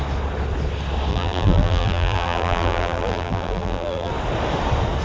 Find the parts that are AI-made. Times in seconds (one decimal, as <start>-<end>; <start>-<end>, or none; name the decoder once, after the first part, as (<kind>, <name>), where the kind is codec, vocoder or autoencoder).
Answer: 1.1-4.1 (vocoder, BigVGAN v2)